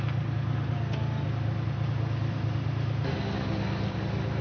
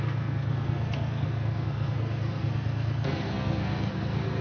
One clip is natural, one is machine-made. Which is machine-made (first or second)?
second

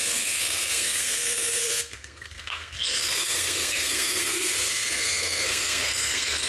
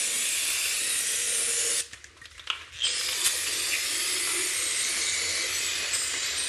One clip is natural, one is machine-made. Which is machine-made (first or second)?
first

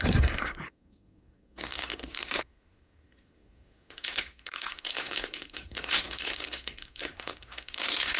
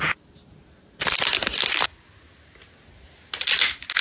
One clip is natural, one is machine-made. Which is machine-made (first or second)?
first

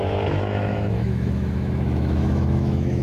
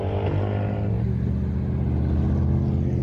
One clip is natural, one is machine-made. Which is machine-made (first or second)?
first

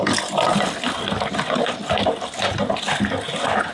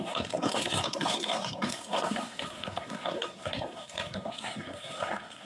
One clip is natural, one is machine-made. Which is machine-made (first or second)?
second